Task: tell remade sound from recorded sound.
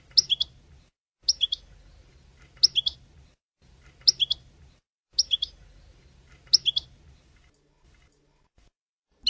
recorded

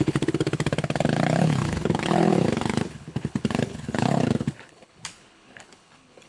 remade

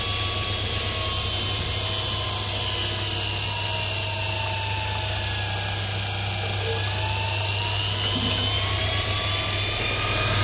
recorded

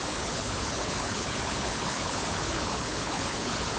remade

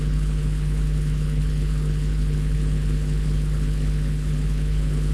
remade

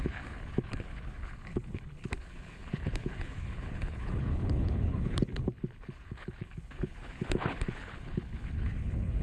remade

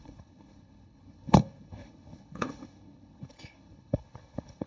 remade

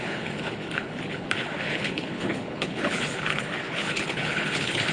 remade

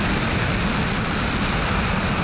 recorded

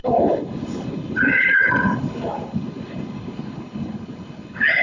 remade